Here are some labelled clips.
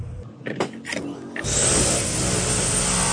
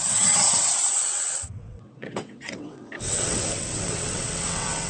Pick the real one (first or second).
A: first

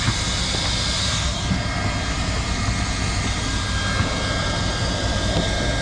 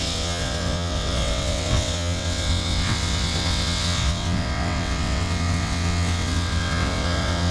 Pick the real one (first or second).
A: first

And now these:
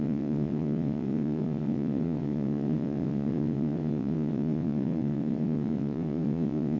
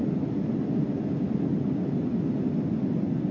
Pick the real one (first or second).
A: second